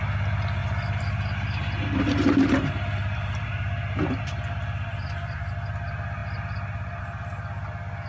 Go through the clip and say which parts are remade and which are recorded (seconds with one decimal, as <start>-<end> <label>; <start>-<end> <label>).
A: 0.0-0.6 recorded; 0.6-5.5 remade; 5.5-8.1 recorded